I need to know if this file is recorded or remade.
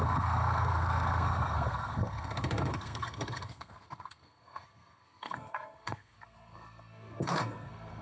remade